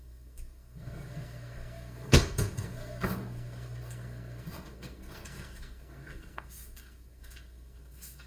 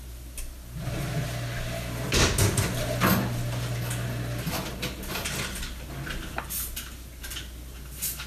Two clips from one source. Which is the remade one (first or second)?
first